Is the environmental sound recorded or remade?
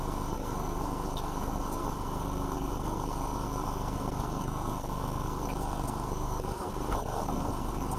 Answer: remade